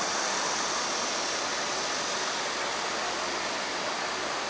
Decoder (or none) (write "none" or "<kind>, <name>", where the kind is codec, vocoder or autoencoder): none